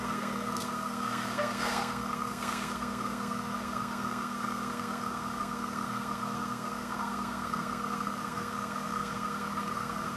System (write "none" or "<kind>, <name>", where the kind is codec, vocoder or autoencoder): codec, SNAC